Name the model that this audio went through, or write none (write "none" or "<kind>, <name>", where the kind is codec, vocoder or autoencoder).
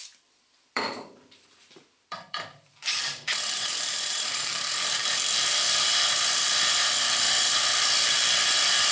vocoder, BigVGAN v2